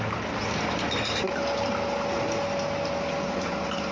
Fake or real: real